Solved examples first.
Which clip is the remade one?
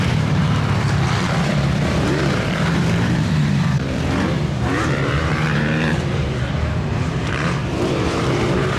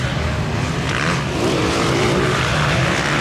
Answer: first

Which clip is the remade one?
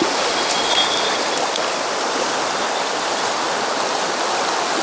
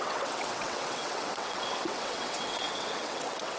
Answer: second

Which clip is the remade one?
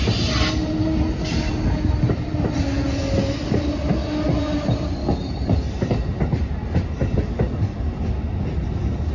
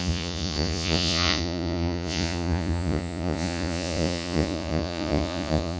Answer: second